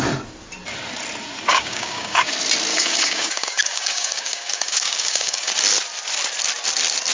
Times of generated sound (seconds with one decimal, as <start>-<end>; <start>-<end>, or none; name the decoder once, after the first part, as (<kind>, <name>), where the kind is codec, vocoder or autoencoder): 1.5-2.3 (codec, DAC); 2.7-5.5